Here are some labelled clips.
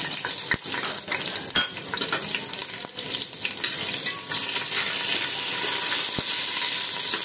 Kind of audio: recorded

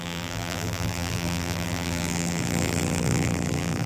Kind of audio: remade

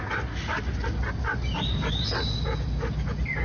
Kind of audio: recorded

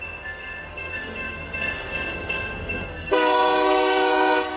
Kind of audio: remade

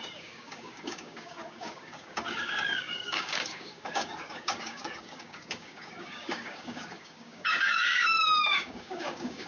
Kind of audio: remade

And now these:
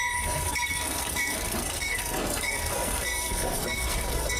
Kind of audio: remade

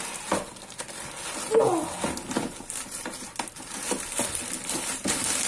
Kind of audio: recorded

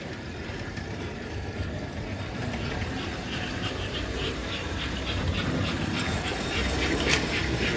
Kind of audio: remade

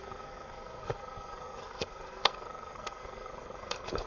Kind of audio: remade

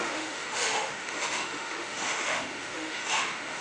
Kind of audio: remade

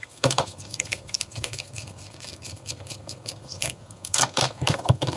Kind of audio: remade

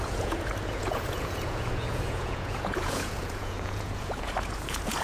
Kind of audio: remade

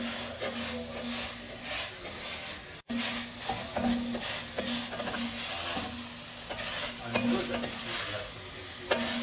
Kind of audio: recorded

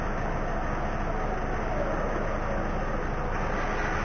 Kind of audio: recorded